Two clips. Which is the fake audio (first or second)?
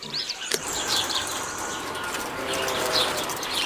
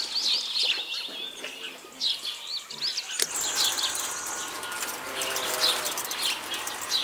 first